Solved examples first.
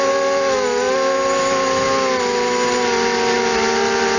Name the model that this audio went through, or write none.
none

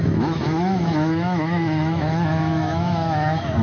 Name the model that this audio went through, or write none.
autoencoder, DAC-VAE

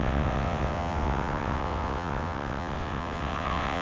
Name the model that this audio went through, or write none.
vocoder, WaveNeXt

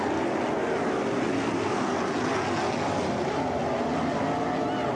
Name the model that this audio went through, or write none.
none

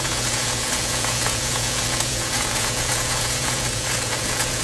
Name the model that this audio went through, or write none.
vocoder, Vocos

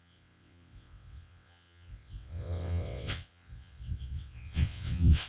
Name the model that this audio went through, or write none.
vocoder, WaveNeXt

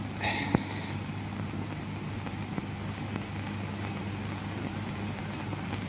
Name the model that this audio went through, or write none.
none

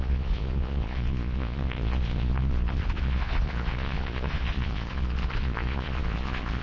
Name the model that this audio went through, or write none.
vocoder, Vocos